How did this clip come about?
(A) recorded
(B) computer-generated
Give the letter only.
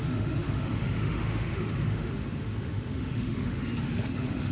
B